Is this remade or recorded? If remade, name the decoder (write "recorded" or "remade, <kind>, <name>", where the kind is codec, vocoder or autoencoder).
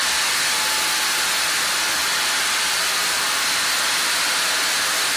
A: recorded